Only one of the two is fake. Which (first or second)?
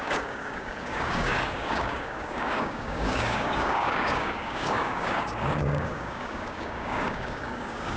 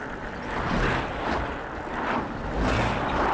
first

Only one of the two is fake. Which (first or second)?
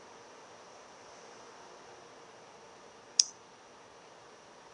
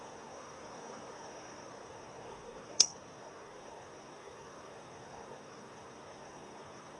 second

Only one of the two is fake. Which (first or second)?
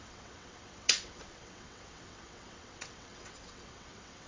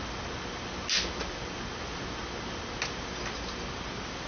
first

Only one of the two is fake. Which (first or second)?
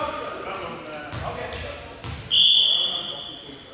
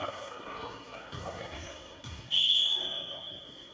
second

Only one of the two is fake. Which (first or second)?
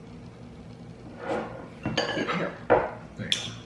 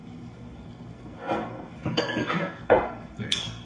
second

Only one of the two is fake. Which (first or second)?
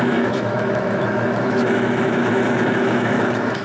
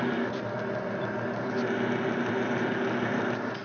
first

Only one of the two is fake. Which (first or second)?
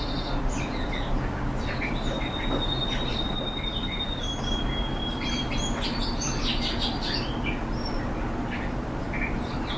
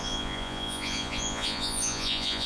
second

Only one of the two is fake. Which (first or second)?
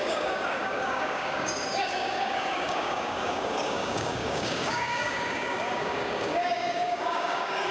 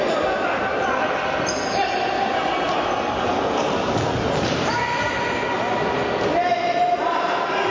first